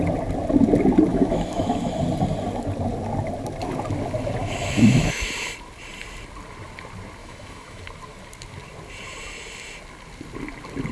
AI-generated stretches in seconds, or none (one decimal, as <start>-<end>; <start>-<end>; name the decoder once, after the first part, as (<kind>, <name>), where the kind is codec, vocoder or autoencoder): 1.1-2.0 (autoencoder, DAC-VAE); 4.4-5.3; 7.2-7.8